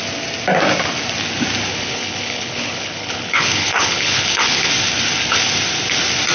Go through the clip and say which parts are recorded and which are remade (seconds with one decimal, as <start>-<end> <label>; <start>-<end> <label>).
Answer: 0.0-1.7 recorded; 1.7-4.7 remade; 4.7-6.3 recorded